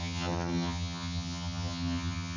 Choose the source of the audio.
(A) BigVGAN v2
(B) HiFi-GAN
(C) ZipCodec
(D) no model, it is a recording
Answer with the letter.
B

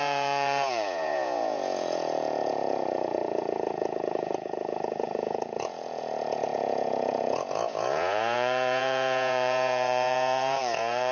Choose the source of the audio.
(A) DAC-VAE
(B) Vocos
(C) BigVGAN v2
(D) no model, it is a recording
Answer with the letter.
B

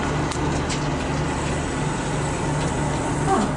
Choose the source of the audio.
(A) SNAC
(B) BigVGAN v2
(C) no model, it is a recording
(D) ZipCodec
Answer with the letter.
C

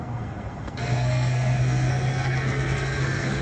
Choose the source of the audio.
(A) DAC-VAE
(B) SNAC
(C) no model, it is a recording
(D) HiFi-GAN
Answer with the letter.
B